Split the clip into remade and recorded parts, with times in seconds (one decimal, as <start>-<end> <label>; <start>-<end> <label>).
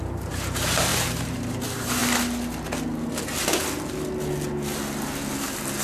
0.0-2.0 remade; 2.0-5.8 recorded